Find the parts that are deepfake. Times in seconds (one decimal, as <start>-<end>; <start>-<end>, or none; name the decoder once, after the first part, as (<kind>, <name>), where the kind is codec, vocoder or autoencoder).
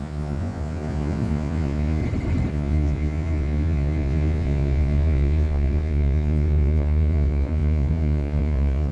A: 0.0-2.0 (vocoder, Vocos); 2.5-8.9